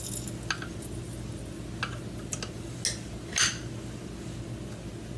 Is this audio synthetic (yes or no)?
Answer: no